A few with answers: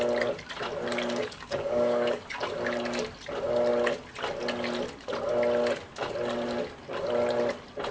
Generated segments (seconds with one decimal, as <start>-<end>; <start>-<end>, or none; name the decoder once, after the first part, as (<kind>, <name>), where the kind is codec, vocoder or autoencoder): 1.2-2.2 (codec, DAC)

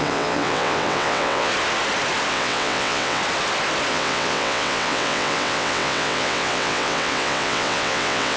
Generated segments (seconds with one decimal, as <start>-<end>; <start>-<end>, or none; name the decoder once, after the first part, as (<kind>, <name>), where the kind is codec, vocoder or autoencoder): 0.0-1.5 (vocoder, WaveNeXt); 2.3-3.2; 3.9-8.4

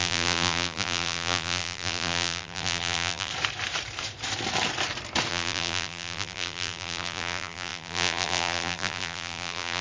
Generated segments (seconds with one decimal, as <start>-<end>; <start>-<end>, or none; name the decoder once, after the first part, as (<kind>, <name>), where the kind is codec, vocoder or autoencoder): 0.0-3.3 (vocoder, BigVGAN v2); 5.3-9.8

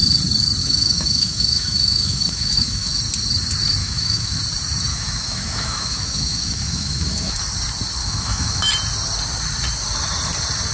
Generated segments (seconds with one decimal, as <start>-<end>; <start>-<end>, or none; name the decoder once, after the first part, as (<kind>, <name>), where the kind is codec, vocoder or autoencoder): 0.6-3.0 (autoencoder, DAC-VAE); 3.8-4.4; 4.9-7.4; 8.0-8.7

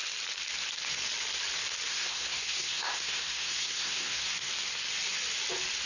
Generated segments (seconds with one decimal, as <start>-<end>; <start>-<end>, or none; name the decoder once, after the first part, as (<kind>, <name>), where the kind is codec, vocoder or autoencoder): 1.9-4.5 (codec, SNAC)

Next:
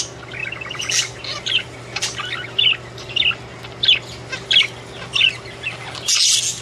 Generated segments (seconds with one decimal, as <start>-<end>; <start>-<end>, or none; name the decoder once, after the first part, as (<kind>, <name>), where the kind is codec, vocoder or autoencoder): none

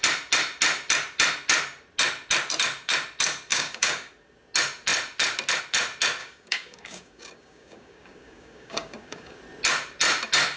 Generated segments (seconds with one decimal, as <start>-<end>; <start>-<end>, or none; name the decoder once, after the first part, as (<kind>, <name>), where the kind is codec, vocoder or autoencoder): 3.5-4.1 (codec, DAC); 6.2-9.4

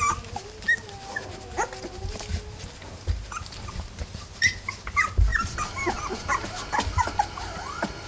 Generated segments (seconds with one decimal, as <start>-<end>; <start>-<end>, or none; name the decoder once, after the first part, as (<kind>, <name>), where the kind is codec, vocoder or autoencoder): none